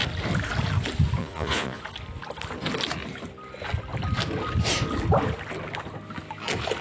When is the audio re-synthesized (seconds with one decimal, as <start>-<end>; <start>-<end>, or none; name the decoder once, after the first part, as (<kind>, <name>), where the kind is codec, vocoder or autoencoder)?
1.2-1.8 (vocoder, Vocos)